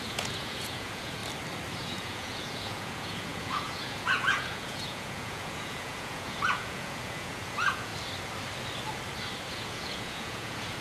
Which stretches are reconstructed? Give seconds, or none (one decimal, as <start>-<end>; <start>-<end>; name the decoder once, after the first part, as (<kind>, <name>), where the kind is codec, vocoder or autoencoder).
0.0-1.2 (vocoder, Vocos); 1.8-7.9; 9.5-10.8